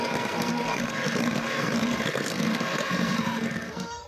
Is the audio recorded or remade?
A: remade